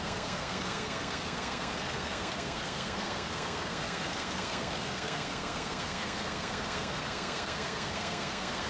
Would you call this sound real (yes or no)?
no